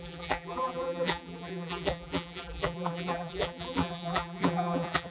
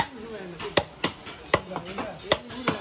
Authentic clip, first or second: second